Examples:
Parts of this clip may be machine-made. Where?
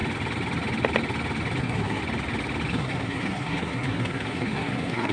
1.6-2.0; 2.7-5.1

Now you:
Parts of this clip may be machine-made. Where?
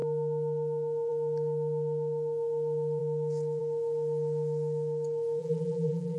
5.4-6.2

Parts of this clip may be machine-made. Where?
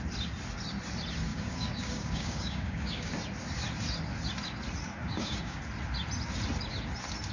1.3-3.1; 5.1-5.6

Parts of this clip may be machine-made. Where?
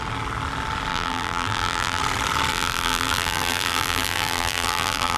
0.9-2.0; 2.5-5.2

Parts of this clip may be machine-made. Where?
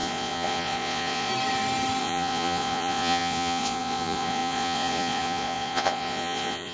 0.0-1.3; 2.0-6.7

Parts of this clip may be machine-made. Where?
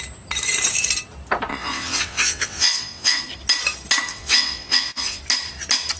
1.5-3.2; 4.1-5.2